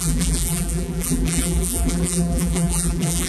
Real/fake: fake